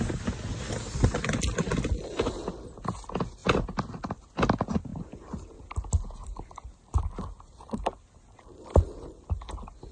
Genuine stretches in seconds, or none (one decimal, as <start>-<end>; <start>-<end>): 0.0-9.9